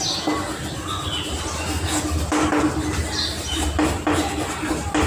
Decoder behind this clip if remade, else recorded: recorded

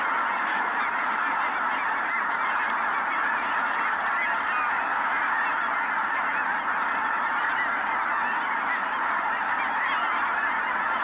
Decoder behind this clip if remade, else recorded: recorded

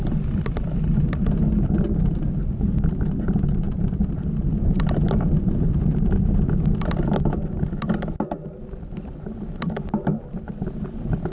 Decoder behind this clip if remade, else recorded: recorded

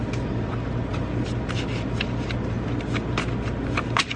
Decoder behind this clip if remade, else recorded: recorded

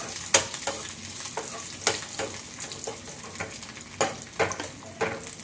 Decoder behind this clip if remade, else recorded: recorded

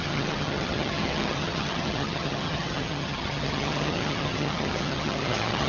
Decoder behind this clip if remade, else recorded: remade, vocoder, HiFi-GAN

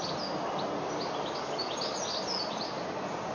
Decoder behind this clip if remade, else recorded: recorded